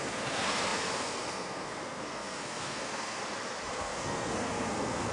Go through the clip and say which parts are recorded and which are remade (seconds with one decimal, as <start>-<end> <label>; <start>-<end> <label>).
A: 0.0-3.2 remade; 3.2-3.7 recorded; 3.7-5.1 remade